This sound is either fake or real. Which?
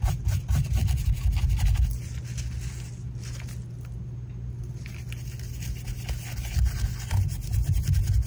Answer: real